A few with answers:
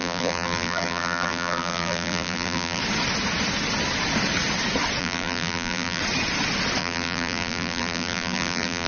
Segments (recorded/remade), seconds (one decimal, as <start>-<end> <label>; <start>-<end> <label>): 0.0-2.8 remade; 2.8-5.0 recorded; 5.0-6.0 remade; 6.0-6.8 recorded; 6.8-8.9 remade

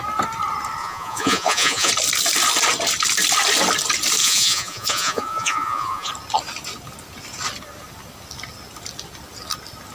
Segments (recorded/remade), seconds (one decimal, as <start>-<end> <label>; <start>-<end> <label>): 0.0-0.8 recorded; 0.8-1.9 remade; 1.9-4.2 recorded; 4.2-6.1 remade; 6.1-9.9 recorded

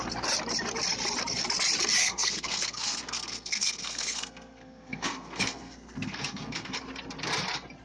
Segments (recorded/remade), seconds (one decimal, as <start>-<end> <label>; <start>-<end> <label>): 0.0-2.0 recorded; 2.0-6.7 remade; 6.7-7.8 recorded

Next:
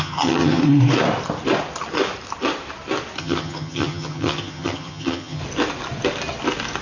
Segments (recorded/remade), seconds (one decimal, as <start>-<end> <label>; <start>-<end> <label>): 0.0-0.6 remade; 0.6-3.2 recorded; 3.2-5.4 remade; 5.4-6.8 recorded

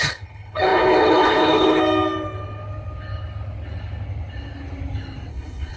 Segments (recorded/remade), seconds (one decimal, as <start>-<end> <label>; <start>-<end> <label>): 0.0-1.8 remade; 1.8-5.3 recorded; 5.3-5.8 remade

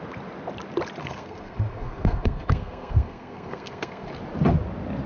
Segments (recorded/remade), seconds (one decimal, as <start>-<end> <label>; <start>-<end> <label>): 0.0-1.0 recorded; 1.0-4.1 remade; 4.1-5.1 recorded

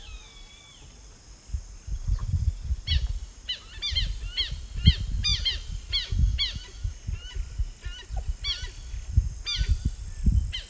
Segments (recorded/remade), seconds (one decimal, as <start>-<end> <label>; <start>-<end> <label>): 0.0-10.7 recorded